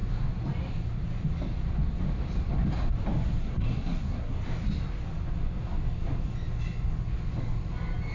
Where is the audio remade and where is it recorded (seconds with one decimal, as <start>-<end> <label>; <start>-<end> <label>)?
0.0-3.4 recorded; 3.4-4.4 remade; 4.4-8.1 recorded